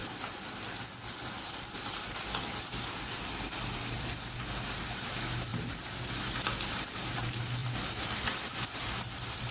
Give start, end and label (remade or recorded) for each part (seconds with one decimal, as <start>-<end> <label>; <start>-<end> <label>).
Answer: 0.0-1.3 recorded; 1.3-9.5 remade

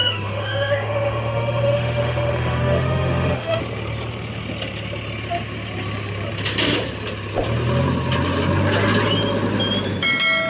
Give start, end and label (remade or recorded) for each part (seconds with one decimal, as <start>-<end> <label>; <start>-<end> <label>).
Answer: 0.0-3.6 remade; 3.6-10.5 recorded